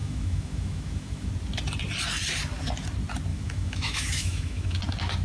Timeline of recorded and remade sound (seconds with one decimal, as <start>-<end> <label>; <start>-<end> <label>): 0.0-1.3 remade; 1.3-3.3 recorded; 3.3-4.8 remade; 4.8-5.2 recorded